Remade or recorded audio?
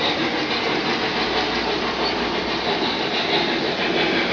recorded